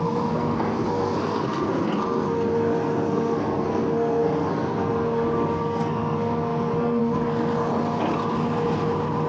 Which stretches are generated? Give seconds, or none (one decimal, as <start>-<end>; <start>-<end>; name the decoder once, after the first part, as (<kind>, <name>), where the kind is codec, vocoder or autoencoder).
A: 0.0-7.7 (codec, SNAC)